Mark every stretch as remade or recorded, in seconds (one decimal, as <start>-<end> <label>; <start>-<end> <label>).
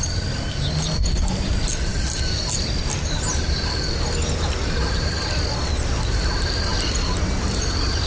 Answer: 0.0-1.9 recorded; 1.9-2.8 remade; 2.8-8.1 recorded